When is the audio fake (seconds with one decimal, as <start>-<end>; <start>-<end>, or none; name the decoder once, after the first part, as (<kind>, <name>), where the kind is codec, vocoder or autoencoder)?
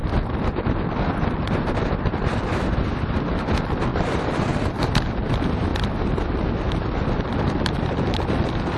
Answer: 0.0-1.4 (vocoder, BigVGAN v2); 3.9-4.8